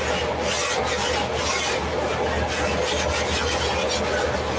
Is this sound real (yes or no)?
yes